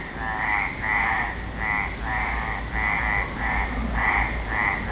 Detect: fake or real real